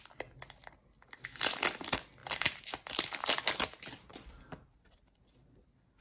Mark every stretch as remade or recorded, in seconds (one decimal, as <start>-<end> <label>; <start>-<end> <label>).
0.0-2.2 recorded; 2.2-4.7 remade; 4.7-6.0 recorded